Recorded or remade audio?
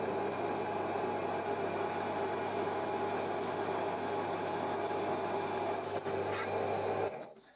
recorded